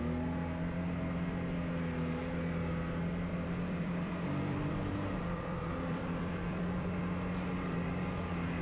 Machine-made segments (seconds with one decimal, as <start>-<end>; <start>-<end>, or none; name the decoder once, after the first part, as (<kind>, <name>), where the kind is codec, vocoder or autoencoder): 3.3-7.0 (vocoder, BigVGAN v2)